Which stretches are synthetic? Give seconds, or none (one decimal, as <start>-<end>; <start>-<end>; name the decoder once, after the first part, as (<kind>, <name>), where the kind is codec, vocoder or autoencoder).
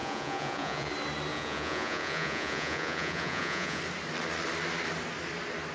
0.0-0.9 (vocoder, Vocos); 1.3-3.8